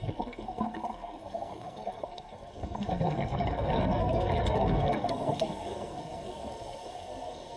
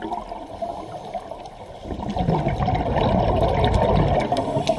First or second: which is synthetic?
first